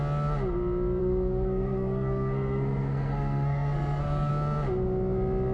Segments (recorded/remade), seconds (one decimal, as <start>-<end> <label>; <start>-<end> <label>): 0.0-1.0 recorded; 1.0-4.3 remade; 4.3-5.5 recorded